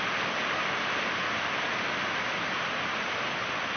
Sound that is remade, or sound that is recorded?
recorded